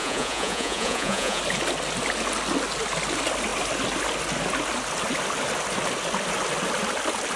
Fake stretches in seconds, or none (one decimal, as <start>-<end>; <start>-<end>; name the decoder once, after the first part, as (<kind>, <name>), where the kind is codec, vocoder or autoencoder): 0.0-1.4 (vocoder, Vocos)